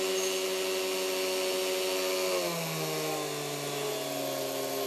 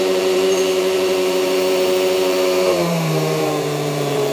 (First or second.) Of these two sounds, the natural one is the first